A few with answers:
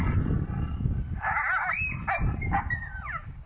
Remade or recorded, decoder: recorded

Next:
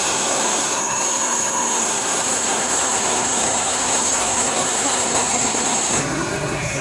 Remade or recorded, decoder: remade, codec, SNAC